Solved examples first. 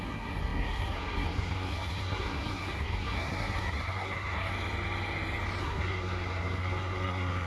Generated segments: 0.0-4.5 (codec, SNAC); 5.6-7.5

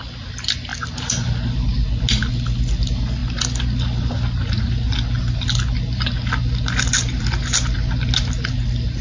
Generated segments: none

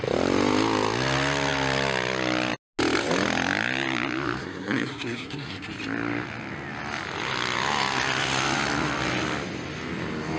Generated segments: 4.4-5.7 (codec, SNAC)